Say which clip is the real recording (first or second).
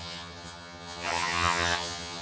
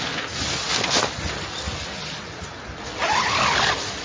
second